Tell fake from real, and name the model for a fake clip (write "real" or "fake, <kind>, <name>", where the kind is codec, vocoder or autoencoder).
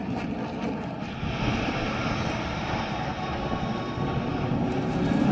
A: real